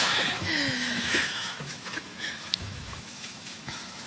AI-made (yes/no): yes